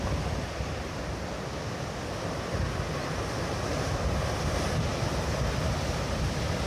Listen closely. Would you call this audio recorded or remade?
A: recorded